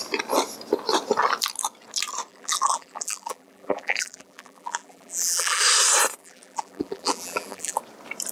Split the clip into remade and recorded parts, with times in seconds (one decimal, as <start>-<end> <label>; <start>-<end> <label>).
0.0-2.3 recorded; 2.3-5.6 remade; 5.6-6.2 recorded; 6.2-7.8 remade; 7.8-8.3 recorded